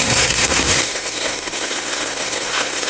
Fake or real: fake